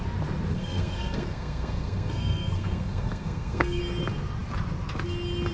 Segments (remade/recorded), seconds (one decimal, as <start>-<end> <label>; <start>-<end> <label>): 0.0-0.5 recorded; 0.5-3.8 remade; 3.8-5.5 recorded